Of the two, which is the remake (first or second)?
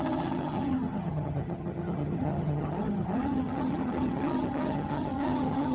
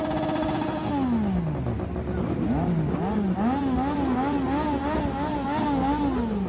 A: first